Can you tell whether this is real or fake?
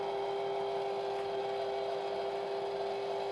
real